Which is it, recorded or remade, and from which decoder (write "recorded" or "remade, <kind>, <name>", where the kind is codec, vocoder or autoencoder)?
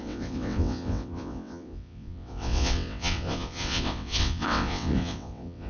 remade, vocoder, WaveNeXt